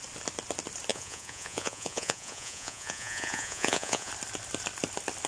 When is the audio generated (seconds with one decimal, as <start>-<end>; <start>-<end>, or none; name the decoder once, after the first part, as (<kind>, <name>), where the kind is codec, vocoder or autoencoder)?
0.9-4.1 (vocoder, Vocos)

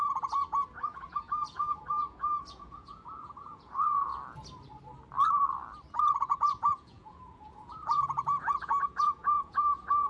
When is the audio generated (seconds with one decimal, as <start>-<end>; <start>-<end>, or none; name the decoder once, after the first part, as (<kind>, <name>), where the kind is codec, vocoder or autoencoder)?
0.0-4.1 (vocoder, Vocos); 5.9-10.1